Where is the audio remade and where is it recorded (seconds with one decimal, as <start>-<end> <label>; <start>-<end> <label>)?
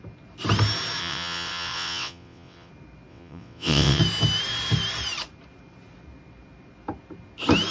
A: 0.0-1.0 recorded; 1.0-2.7 remade; 2.7-3.1 recorded; 3.1-4.0 remade; 4.0-7.7 recorded